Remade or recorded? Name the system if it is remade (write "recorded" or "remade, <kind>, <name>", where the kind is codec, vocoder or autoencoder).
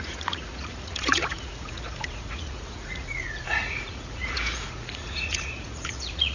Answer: remade, vocoder, Vocos